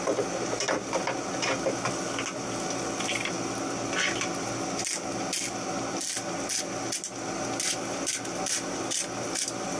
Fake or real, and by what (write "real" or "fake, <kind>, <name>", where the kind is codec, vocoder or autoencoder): real